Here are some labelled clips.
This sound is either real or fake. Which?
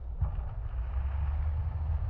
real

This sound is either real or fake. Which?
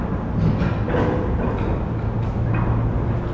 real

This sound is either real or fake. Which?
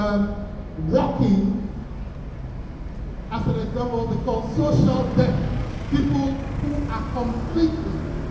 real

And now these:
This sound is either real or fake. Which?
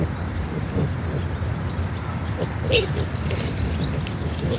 real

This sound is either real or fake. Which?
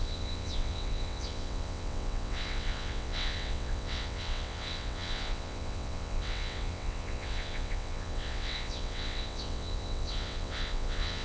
fake